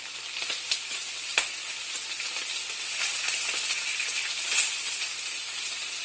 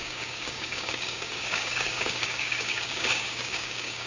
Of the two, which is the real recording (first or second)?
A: first